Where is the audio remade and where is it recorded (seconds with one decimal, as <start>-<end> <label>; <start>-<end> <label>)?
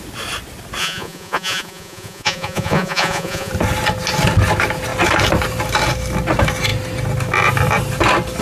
0.0-0.8 recorded; 0.8-3.5 remade; 3.5-8.4 recorded